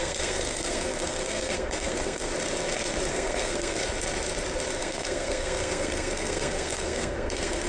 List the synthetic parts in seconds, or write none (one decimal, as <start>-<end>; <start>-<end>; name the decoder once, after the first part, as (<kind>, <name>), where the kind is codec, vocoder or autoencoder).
0.0-2.3 (codec, SNAC); 3.1-3.8; 4.8-7.7